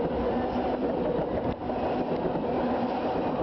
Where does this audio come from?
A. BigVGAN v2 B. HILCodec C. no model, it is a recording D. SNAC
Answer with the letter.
C